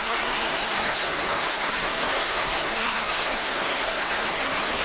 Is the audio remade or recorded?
remade